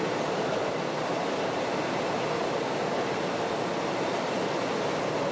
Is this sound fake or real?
real